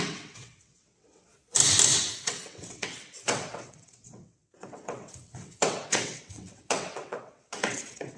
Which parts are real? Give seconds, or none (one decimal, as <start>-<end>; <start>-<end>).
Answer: 1.3-2.1